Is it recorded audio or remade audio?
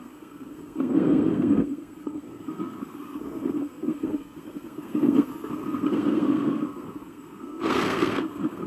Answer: remade